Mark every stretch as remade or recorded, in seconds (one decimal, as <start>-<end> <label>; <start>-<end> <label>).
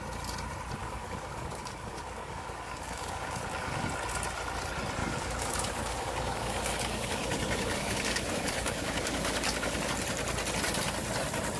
0.0-0.8 recorded; 0.8-3.9 remade; 3.9-5.0 recorded; 5.0-9.9 remade; 9.9-11.6 recorded